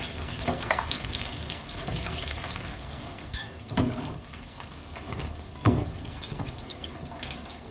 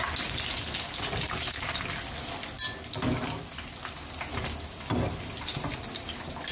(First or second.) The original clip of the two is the second